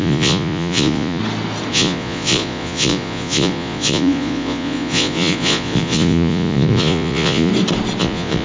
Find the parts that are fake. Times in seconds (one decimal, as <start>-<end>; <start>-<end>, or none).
0.0-1.2; 1.7-7.5; 8.0-8.4